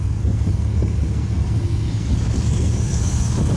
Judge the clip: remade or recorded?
remade